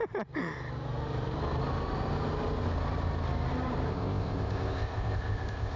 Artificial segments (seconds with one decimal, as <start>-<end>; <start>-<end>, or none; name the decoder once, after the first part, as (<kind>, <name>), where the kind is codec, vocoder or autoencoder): 3.9-5.8 (codec, ZipCodec)